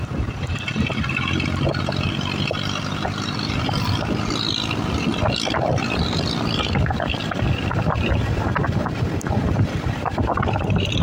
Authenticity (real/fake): real